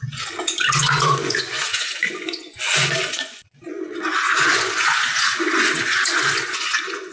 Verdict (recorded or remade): remade